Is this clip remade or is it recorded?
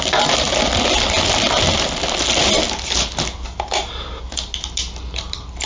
recorded